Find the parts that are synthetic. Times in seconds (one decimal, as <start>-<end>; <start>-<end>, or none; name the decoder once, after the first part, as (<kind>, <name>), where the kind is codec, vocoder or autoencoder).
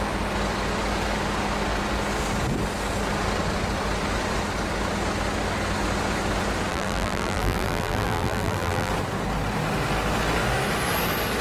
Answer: 6.7-8.9 (vocoder, BigVGAN v2)